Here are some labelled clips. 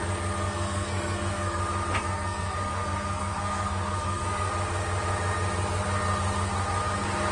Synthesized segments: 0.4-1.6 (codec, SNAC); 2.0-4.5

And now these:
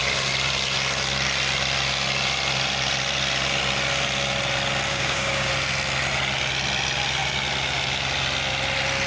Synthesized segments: 4.9-5.5 (codec, DAC)

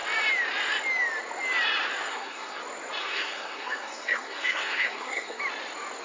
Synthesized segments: 2.0-2.6 (codec, SNAC); 3.0-5.4

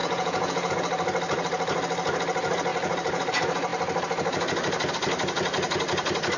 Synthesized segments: 0.0-0.7 (vocoder, Vocos)

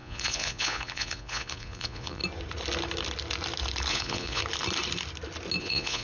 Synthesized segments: 0.0-2.2 (vocoder, Vocos); 3.9-4.4; 5.6-6.0

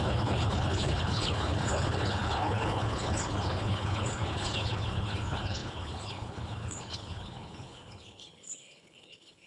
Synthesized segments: 0.0-9.5 (codec, HILCodec)

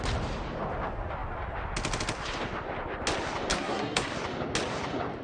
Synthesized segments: 3.5-4.1 (codec, SNAC)